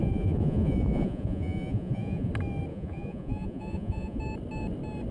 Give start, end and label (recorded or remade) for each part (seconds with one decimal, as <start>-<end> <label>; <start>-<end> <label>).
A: 0.0-2.3 remade; 2.3-2.7 recorded; 2.7-4.2 remade; 4.2-5.1 recorded